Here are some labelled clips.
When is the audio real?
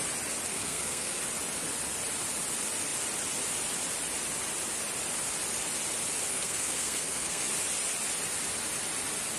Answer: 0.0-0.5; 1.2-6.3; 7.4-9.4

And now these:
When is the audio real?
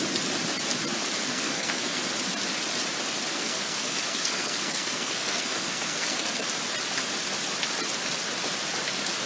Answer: 0.0-1.2; 2.0-3.3; 6.4-9.3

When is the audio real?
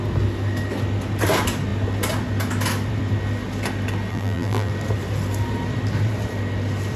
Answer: 0.0-4.1; 4.7-7.0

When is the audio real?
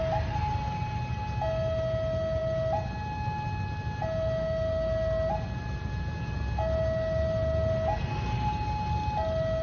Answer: 0.0-9.6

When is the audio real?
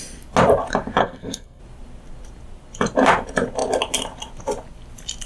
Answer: 0.0-1.0; 1.6-5.3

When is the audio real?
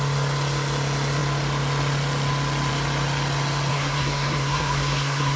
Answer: 0.0-3.7